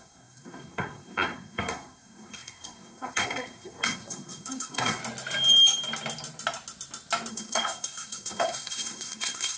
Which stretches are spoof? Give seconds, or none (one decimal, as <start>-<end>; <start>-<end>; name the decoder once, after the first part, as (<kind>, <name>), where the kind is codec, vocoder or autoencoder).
0.0-5.0 (codec, SNAC); 7.3-9.6